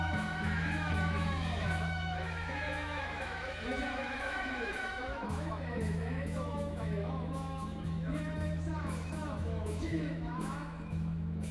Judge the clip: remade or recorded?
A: remade